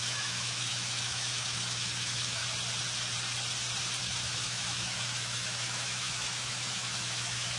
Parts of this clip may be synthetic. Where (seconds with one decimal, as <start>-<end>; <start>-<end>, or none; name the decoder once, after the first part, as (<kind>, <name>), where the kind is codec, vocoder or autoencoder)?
0.0-2.4 (autoencoder, DAC-VAE); 4.0-7.6